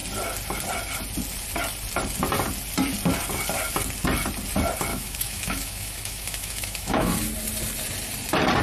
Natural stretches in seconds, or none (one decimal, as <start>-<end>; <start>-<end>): 0.0-4.9; 7.1-8.6